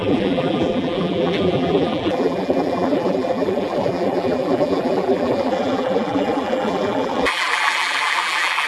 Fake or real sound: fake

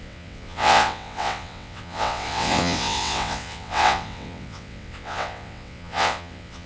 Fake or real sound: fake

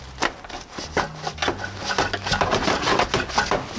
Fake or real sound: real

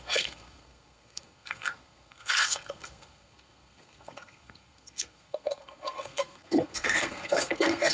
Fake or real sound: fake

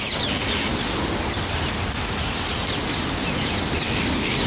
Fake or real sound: real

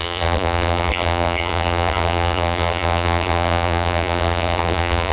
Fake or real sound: fake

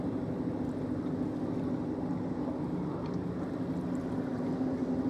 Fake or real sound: real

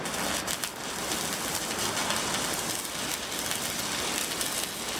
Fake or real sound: real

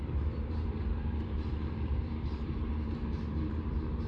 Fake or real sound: fake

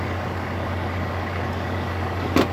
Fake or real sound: fake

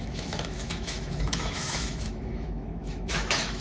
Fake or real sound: fake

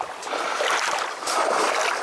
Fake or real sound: real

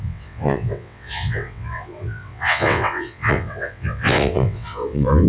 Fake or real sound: fake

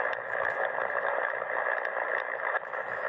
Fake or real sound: fake